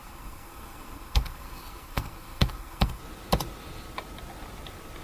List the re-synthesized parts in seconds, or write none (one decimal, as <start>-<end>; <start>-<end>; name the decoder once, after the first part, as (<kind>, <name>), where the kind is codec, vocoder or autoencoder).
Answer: 0.0-3.0 (codec, SNAC)